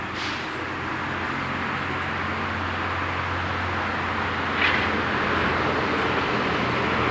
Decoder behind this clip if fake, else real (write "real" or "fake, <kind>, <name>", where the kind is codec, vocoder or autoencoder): real